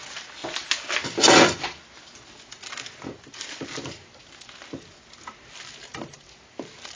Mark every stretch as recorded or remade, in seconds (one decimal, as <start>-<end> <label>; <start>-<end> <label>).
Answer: 0.0-7.0 recorded